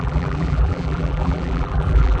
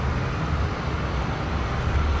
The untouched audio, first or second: second